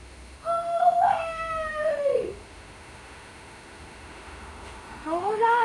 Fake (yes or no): yes